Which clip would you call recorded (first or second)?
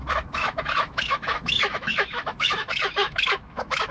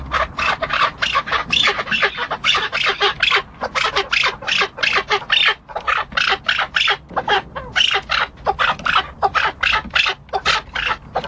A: second